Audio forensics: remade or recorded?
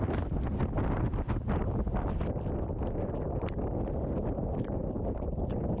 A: recorded